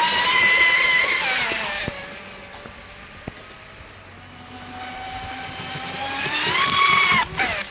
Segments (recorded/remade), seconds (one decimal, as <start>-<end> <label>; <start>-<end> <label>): 0.0-1.0 remade; 1.0-5.4 recorded; 5.4-7.7 remade